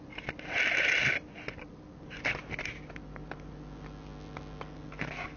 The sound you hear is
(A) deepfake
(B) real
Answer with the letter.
B